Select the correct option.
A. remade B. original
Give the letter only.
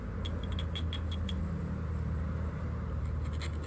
B